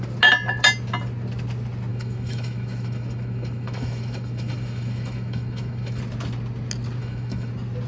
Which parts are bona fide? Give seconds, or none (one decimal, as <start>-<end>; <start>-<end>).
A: 0.0-1.9; 6.0-7.0; 7.5-7.9